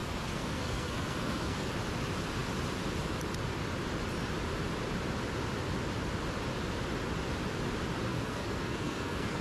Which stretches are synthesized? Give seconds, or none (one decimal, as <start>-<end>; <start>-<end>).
0.0-1.7; 8.1-9.4